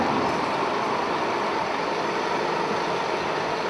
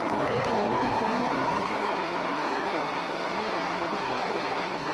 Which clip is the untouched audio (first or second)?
first